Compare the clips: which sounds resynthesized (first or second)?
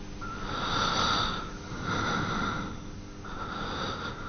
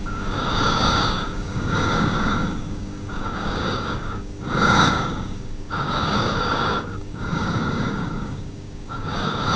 second